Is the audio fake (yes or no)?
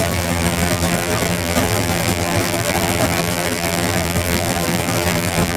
yes